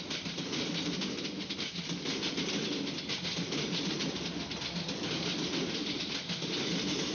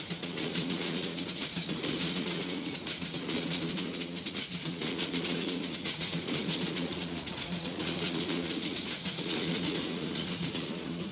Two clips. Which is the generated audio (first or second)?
second